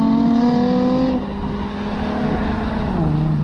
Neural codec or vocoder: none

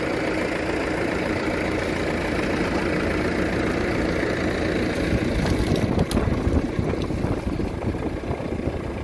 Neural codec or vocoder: none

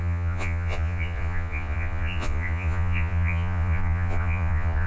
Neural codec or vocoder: vocoder, Vocos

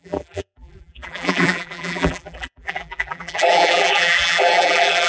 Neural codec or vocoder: vocoder, BigVGAN v2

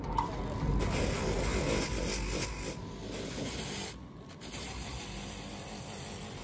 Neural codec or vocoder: none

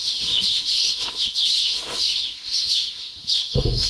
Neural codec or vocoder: autoencoder, DAC-VAE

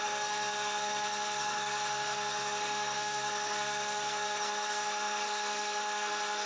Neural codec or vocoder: codec, SNAC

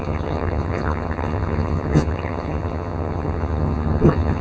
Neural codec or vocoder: vocoder, HiFi-GAN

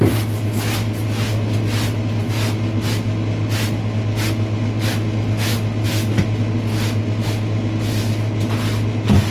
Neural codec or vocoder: none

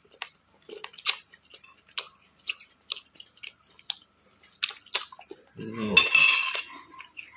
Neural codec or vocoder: none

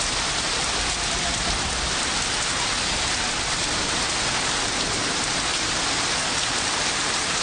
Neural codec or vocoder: none